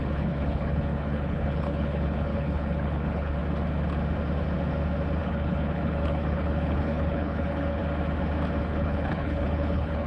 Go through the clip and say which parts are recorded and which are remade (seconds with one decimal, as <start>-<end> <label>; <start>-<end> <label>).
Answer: 0.0-3.4 remade; 3.4-5.2 recorded; 5.2-7.8 remade; 7.8-8.6 recorded; 8.6-10.1 remade